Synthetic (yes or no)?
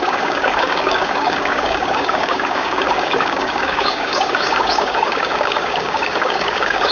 yes